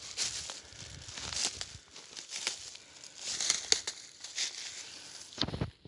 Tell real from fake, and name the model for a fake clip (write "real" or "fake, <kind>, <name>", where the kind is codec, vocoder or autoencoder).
real